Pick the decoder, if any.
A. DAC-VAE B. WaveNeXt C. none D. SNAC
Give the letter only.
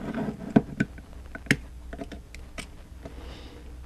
C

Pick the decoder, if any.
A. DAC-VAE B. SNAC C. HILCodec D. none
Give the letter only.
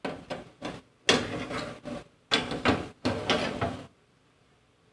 D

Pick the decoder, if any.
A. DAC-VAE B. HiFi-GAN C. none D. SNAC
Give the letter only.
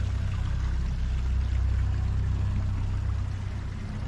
C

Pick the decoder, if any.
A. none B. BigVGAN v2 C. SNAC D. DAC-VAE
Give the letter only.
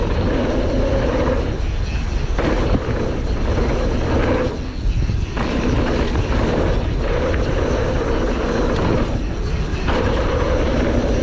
A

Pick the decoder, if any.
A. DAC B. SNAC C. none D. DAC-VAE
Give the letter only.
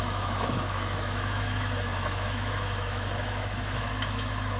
D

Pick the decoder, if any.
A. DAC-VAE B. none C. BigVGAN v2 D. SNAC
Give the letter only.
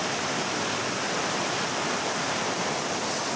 B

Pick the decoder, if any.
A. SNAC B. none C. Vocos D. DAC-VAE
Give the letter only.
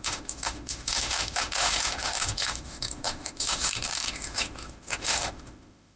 D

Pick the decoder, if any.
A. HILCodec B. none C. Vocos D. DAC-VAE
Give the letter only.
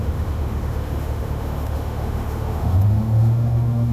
D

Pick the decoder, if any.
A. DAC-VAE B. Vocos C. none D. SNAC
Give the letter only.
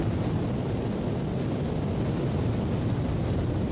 C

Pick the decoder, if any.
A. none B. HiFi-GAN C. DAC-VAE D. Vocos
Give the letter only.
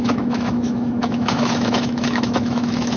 C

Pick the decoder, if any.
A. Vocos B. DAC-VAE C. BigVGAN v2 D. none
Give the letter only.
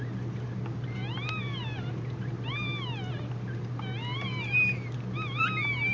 D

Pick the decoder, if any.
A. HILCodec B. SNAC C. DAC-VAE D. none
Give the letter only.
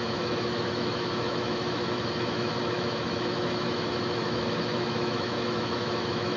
C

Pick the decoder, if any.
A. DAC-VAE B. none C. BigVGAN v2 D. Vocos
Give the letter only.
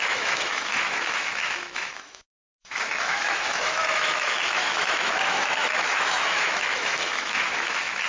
A